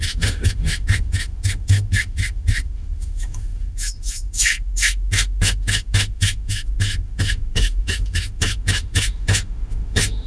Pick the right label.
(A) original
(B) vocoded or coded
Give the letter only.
B